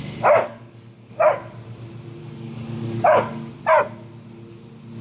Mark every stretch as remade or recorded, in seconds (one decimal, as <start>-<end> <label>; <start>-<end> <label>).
0.0-0.4 recorded; 0.4-1.1 remade; 1.1-2.2 recorded; 2.2-3.5 remade; 3.5-5.0 recorded